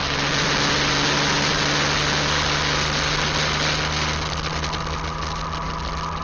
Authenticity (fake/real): real